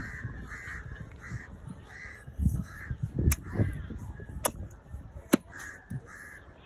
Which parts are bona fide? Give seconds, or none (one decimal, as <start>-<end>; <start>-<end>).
0.0-2.1; 2.8-6.7